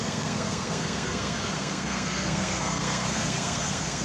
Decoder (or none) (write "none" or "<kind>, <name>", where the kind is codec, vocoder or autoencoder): codec, SNAC